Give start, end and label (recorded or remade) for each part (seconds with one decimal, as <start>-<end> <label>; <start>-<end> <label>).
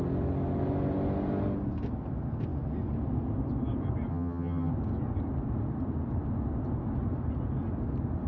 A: 0.0-4.1 recorded; 4.1-4.7 remade; 4.7-8.3 recorded